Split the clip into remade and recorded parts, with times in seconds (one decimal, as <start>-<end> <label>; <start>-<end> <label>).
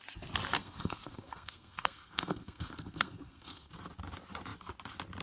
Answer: 0.0-0.6 recorded; 0.6-3.7 remade; 3.7-5.2 recorded